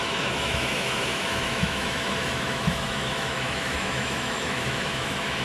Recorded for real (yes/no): no